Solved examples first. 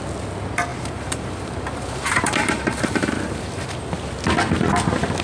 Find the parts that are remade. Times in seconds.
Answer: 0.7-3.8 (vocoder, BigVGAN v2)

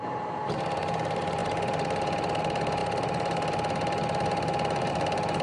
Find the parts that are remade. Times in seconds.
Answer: 0.0-5.4 (vocoder, BigVGAN v2)